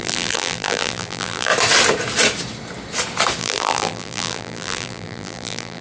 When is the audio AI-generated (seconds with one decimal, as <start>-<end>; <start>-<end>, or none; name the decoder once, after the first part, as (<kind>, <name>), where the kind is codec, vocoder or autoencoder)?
0.0-1.5 (vocoder, BigVGAN v2); 3.4-5.8